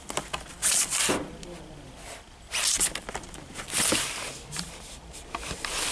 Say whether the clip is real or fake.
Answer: real